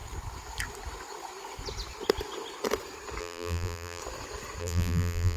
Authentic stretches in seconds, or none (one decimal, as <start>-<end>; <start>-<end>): 0.0-3.2; 4.0-4.6